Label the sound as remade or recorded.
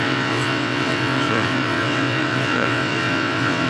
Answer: remade